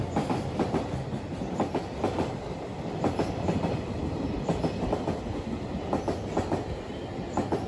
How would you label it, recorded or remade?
recorded